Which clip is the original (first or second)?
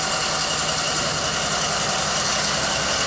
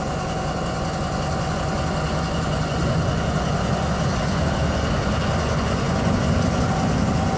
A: first